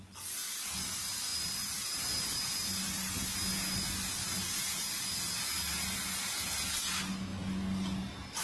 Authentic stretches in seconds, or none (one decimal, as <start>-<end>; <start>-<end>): 0.0-8.4